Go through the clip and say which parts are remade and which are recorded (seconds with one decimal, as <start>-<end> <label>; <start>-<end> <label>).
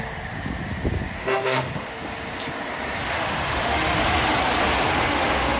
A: 0.0-1.2 recorded; 1.2-1.9 remade; 1.9-3.1 recorded; 3.1-4.0 remade; 4.0-4.9 recorded; 4.9-5.6 remade